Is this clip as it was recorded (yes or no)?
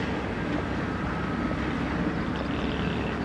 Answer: no